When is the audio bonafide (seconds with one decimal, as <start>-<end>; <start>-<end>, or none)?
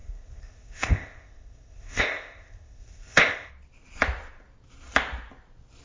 3.5-5.8